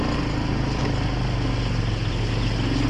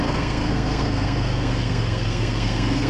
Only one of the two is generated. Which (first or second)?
second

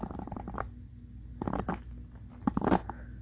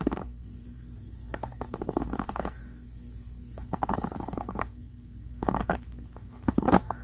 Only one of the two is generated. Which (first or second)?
second